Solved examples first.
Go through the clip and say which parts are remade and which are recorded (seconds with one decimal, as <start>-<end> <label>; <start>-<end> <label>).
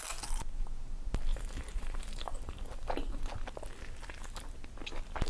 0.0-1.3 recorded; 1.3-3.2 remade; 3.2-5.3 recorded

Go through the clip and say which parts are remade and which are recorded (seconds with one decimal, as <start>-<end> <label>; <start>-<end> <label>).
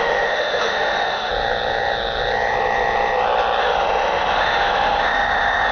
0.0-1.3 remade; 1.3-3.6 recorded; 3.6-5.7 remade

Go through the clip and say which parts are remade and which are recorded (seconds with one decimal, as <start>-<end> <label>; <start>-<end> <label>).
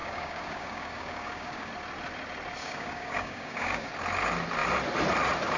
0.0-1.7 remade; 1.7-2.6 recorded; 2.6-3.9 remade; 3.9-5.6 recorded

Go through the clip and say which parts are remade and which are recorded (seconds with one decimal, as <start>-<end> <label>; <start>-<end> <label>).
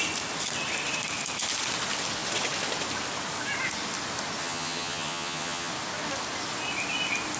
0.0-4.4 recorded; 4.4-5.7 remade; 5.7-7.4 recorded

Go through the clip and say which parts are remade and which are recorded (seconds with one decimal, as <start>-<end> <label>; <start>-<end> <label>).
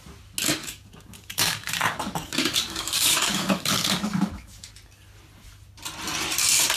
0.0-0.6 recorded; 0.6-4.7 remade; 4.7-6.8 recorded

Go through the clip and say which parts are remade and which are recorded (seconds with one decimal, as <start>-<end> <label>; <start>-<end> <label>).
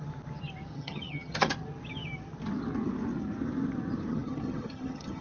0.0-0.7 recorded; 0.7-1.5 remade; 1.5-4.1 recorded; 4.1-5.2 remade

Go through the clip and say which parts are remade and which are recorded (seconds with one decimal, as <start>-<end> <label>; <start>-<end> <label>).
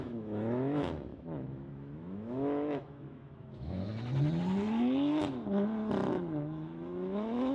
0.0-3.9 remade; 3.9-6.1 recorded; 6.1-7.5 remade